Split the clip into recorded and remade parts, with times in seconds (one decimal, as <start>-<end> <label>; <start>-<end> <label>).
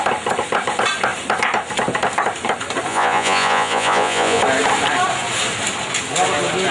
0.0-2.9 recorded; 2.9-4.4 remade; 4.4-6.7 recorded